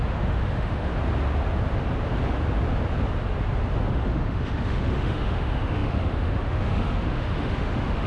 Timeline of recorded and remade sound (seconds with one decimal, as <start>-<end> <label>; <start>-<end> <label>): 0.0-0.9 remade; 0.9-3.9 recorded; 3.9-8.1 remade